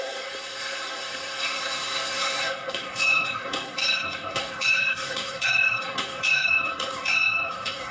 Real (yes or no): no